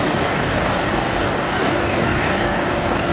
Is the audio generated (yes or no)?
yes